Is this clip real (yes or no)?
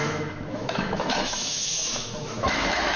no